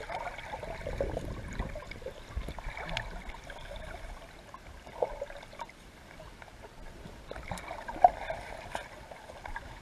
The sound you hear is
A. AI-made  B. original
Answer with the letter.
B